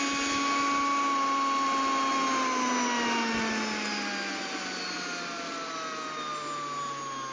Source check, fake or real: real